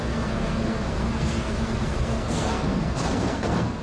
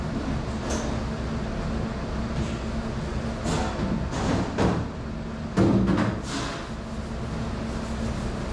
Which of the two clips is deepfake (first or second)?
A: first